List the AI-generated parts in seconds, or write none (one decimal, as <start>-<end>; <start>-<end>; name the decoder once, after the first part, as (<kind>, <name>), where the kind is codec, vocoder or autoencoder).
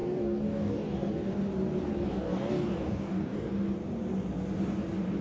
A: 0.0-1.1 (codec, DAC); 2.1-3.5